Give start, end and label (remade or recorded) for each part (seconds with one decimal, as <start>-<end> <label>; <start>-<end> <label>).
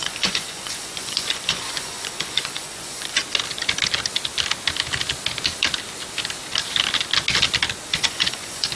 0.0-3.2 remade; 3.2-7.9 recorded; 7.9-8.8 remade